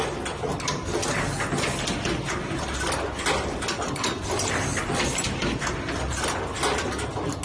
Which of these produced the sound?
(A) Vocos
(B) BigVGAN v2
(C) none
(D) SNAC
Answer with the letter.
C